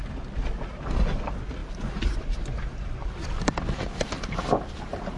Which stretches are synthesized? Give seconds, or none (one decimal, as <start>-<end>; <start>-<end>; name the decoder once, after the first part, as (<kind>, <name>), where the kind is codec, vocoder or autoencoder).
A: none